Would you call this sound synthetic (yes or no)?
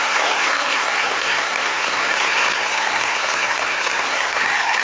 yes